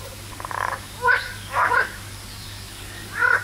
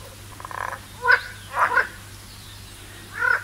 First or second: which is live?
second